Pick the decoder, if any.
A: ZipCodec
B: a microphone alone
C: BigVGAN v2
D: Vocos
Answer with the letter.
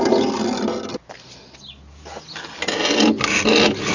B